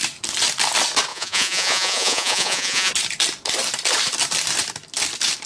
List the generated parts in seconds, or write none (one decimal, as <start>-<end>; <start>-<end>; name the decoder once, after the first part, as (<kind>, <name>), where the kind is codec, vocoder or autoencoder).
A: 1.1-2.9 (vocoder, Vocos)